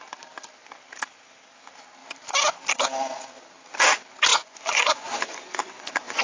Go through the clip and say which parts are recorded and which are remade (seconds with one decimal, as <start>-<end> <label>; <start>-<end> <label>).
0.0-4.3 recorded; 4.3-6.2 remade